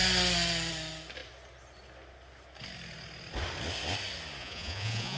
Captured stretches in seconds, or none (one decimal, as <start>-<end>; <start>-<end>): 0.0-4.4